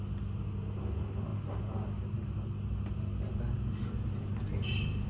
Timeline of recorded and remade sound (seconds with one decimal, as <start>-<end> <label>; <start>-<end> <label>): 0.0-5.1 recorded